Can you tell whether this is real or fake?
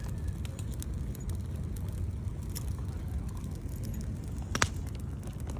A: real